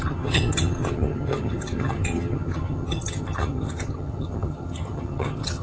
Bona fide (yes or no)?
no